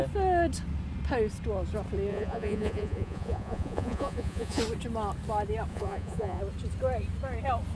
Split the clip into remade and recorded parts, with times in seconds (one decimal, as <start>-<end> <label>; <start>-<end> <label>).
0.0-2.1 recorded; 2.1-4.6 remade; 4.6-5.7 recorded; 5.7-6.4 remade; 6.4-7.8 recorded